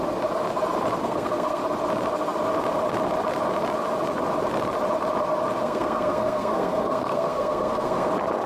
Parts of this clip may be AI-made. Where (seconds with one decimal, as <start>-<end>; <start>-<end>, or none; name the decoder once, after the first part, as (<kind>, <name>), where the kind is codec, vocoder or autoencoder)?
1.0-1.6 (codec, SNAC); 5.6-8.1

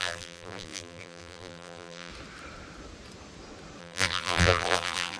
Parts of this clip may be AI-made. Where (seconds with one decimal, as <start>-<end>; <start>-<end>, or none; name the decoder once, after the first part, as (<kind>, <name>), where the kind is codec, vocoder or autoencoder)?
0.0-2.1 (vocoder, BigVGAN v2); 3.8-5.2

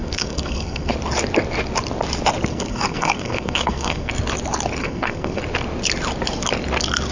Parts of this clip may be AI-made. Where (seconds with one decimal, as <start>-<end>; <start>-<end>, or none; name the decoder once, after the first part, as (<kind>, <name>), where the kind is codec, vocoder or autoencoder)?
0.0-0.9 (codec, SNAC); 2.5-4.1; 4.8-5.4

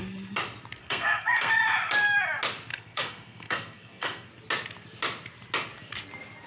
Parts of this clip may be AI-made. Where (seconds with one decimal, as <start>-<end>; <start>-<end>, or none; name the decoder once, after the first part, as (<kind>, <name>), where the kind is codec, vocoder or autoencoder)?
0.8-1.5 (codec, SNAC); 2.7-4.3

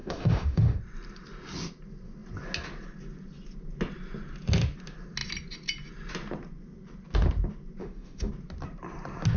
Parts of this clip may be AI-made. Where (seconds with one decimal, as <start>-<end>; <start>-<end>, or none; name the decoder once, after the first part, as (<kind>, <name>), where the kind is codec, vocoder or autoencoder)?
0.0-0.8 (autoencoder, DAC-VAE); 7.8-8.3

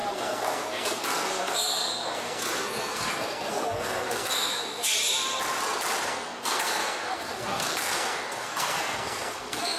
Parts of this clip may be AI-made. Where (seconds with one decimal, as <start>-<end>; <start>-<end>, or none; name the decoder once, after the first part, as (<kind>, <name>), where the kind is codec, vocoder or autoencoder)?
0.0-4.9 (codec, SNAC); 6.1-9.8

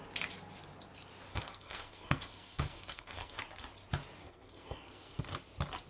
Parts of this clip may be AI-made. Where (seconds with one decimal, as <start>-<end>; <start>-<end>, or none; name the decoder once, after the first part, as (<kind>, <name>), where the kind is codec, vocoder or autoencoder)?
1.3-3.4 (codec, SNAC); 4.2-5.2

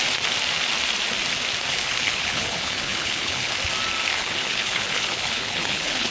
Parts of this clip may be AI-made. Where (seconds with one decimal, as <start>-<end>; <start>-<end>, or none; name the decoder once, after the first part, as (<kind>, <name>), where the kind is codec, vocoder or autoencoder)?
1.7-3.5 (codec, HILCodec); 4.1-6.1